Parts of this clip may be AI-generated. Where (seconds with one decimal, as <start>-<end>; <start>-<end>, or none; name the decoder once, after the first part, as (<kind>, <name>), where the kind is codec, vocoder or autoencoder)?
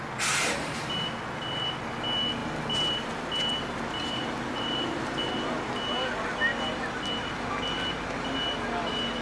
2.4-5.2 (vocoder, BigVGAN v2)